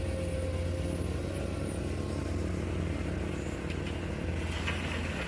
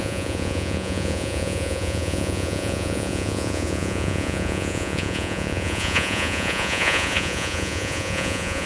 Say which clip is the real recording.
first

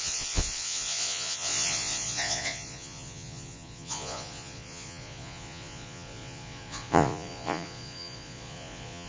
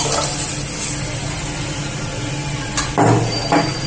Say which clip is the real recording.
second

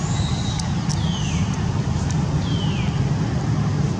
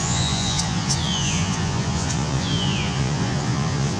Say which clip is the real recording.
first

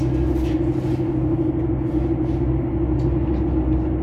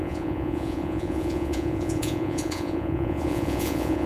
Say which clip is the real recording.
first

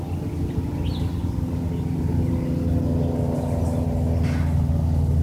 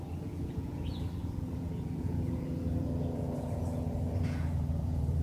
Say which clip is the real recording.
first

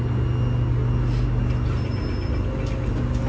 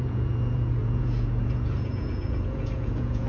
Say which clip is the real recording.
first